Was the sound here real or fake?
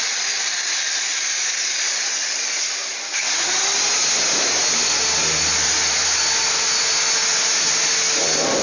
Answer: real